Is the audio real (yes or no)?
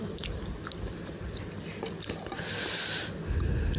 yes